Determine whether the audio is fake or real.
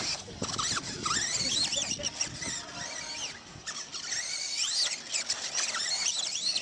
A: real